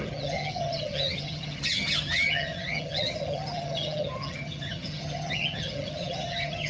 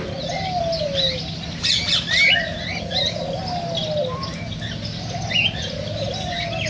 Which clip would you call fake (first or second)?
first